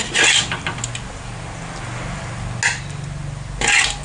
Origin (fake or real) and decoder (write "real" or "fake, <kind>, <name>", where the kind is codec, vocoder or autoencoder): real